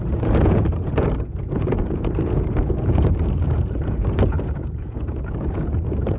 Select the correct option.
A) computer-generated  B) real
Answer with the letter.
A